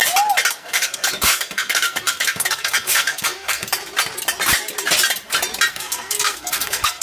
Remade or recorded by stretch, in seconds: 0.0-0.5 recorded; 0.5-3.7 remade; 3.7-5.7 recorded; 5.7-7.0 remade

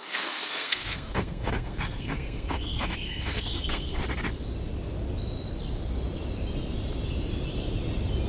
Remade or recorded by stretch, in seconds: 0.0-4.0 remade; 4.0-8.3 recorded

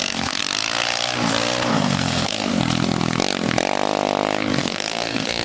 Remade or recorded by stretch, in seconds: 0.0-0.4 remade; 0.4-1.7 recorded; 1.7-2.5 remade; 2.5-4.6 recorded; 4.6-5.4 remade

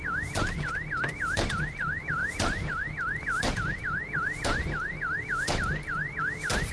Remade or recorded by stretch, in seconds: 0.0-6.7 recorded